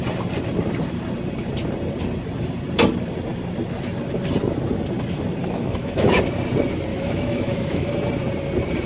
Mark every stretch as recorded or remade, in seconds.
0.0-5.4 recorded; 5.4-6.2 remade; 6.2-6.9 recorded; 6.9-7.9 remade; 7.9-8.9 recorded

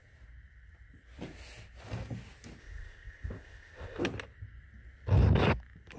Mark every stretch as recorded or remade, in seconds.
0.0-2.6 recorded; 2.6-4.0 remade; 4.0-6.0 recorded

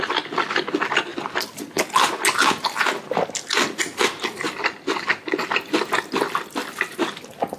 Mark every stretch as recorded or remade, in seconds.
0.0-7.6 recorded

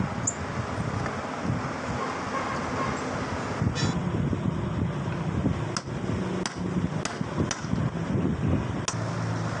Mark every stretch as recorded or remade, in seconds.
0.0-9.6 recorded

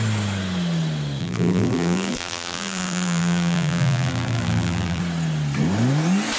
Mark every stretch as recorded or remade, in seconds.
0.0-1.2 recorded; 1.2-5.0 remade; 5.0-6.4 recorded

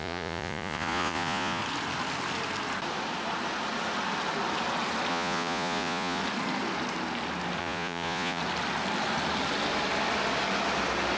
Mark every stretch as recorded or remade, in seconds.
0.0-1.6 remade; 1.6-5.1 recorded; 5.1-6.2 remade; 6.2-7.6 recorded; 7.6-8.4 remade; 8.4-11.2 recorded